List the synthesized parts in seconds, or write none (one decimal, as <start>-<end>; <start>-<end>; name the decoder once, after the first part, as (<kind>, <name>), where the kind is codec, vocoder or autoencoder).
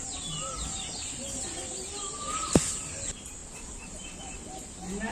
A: none